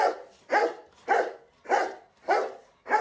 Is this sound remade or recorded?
recorded